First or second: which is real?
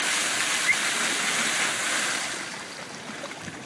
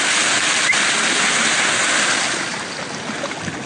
second